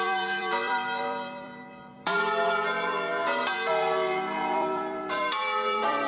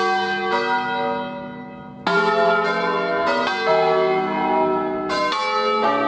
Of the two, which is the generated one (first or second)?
first